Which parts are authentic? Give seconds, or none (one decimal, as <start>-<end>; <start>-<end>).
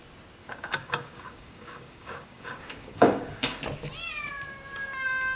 0.0-0.4; 3.6-5.4